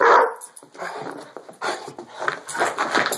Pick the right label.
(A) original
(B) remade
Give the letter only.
A